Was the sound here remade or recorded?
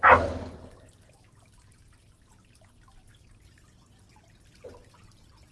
recorded